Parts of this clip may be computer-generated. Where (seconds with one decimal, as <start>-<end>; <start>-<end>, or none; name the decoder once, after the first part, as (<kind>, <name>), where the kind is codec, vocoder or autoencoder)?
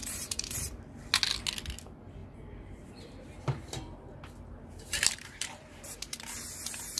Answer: 0.0-0.8 (vocoder, BigVGAN v2); 2.2-6.3